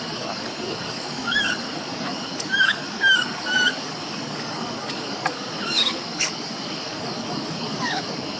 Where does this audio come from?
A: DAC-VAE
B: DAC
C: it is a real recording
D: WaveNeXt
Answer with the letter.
B